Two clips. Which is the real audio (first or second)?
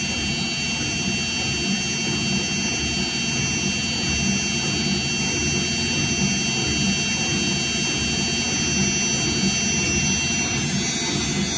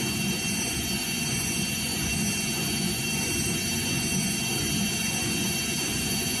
first